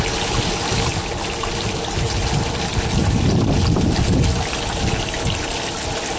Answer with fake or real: real